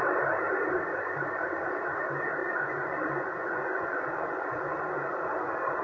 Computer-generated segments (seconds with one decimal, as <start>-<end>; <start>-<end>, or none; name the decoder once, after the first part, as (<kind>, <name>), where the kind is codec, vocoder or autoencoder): 2.4-4.8 (vocoder, Vocos)